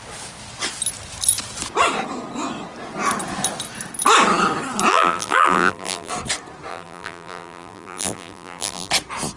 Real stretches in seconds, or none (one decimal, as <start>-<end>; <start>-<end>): 0.0-4.9; 6.1-6.7; 8.9-9.4